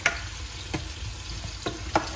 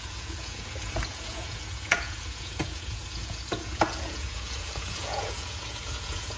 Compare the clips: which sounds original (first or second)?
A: first